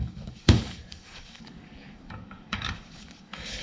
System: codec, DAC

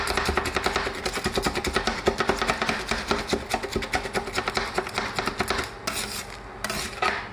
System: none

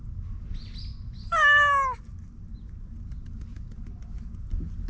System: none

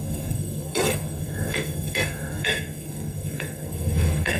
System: codec, SNAC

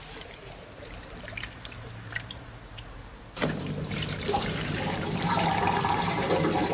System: vocoder, BigVGAN v2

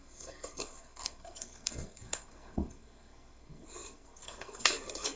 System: codec, SNAC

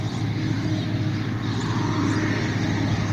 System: none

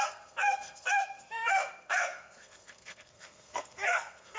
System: codec, SNAC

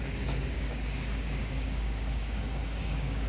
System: codec, DAC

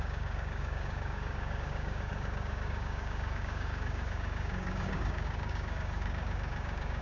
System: codec, DAC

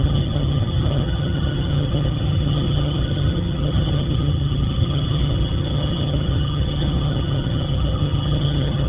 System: vocoder, HiFi-GAN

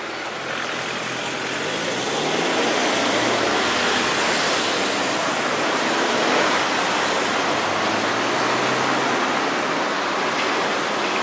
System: none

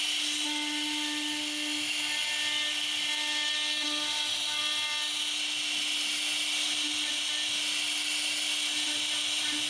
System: none